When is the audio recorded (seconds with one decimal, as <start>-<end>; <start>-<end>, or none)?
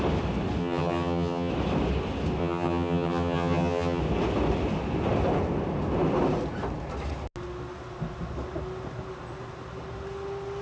0.0-0.6; 1.5-2.4; 4.0-10.6